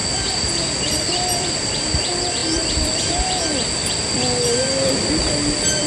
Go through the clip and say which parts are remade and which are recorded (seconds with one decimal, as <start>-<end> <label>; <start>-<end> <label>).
0.0-3.8 remade; 3.8-5.9 recorded